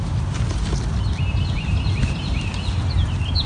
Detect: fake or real real